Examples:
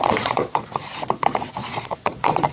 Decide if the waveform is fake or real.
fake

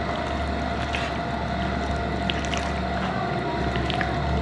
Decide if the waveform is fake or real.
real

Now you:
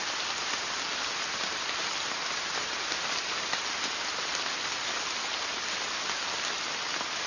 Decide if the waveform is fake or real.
real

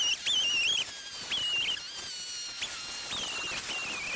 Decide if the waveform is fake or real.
real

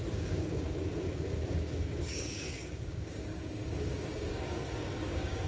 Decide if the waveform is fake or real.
fake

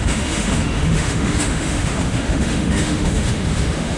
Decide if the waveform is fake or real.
fake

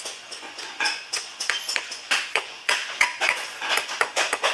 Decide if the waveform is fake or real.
fake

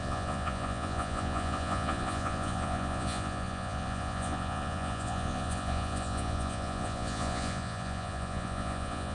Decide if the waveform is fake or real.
fake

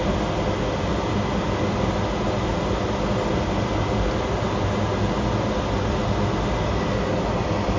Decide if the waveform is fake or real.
real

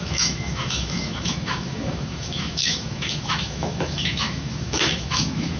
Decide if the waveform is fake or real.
fake